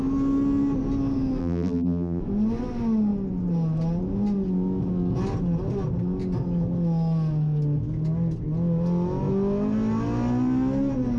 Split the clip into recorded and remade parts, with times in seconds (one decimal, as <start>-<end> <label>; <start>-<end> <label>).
0.0-1.4 recorded; 1.4-2.2 remade; 2.2-11.2 recorded